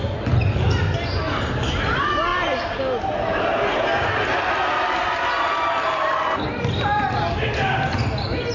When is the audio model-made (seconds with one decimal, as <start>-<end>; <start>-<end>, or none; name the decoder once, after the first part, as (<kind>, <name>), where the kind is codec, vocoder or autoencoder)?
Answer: none